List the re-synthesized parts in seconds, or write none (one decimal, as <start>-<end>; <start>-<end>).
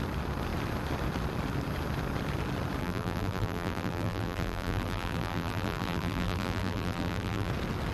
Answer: 2.8-7.5